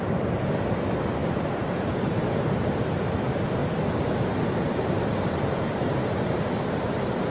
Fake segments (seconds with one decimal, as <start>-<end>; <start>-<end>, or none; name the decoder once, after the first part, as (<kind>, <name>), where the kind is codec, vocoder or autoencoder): 1.2-2.8 (vocoder, BigVGAN v2); 3.6-7.3